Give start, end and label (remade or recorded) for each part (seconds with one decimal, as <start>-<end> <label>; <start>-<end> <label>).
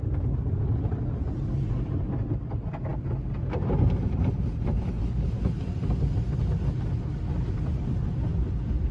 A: 0.0-8.9 recorded